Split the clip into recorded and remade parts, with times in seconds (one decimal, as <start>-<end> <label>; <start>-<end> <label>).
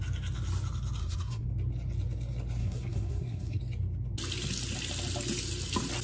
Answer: 0.0-1.0 recorded; 1.0-1.5 remade; 1.5-2.6 recorded; 2.6-3.6 remade; 3.6-6.0 recorded